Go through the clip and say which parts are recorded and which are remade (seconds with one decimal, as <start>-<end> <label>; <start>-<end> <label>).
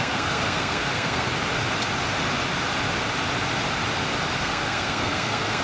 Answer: 0.0-1.3 remade; 1.3-4.4 recorded; 4.4-5.6 remade